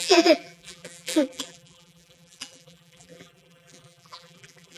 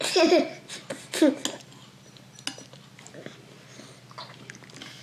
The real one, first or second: second